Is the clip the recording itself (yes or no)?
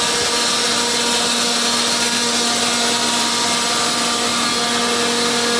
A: yes